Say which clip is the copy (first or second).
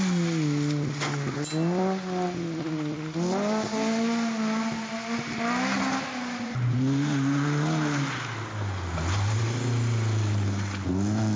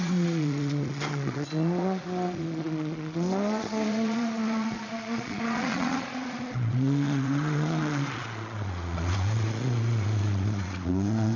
second